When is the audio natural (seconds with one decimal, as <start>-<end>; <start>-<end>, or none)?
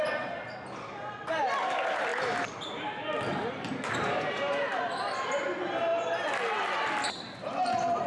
0.0-8.1